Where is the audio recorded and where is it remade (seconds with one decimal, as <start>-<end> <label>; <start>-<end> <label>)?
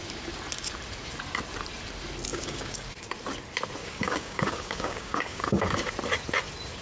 0.0-2.3 recorded; 2.3-2.9 remade; 2.9-3.8 recorded; 3.8-5.9 remade; 5.9-6.8 recorded